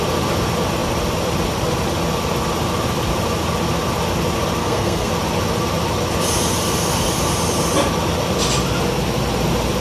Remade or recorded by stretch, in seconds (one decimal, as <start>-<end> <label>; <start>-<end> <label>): 0.0-4.6 recorded; 4.6-5.1 remade; 5.1-9.8 recorded